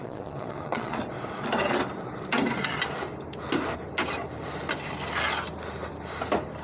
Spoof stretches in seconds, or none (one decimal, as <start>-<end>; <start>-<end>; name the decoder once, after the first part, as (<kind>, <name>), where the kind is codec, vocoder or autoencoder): 0.0-1.0 (vocoder, Vocos)